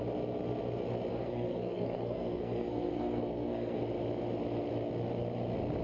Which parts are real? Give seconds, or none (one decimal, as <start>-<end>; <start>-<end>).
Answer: 0.0-1.1; 3.8-5.8